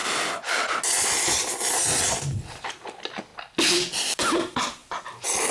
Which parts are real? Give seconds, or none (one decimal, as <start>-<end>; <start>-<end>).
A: 0.0-2.6; 3.3-3.8; 4.8-5.5